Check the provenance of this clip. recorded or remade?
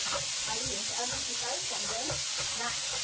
recorded